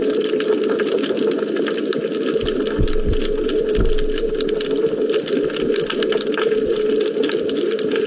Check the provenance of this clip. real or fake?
real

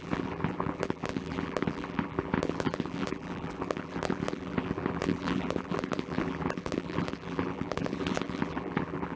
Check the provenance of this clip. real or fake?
fake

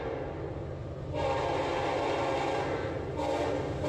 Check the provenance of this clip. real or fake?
real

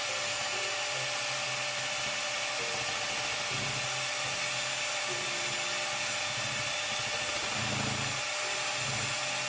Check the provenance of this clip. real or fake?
real